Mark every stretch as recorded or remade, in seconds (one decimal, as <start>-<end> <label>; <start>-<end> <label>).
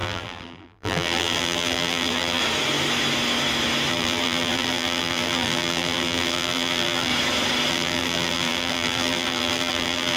0.0-2.4 remade; 2.4-3.9 recorded; 3.9-7.1 remade; 7.1-7.7 recorded; 7.7-10.2 remade